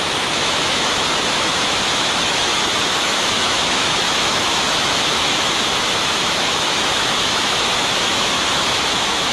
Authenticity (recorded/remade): remade